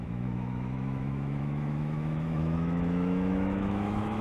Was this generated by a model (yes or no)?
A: yes